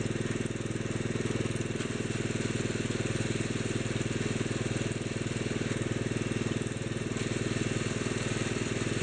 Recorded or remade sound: recorded